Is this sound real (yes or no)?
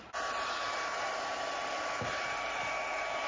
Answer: no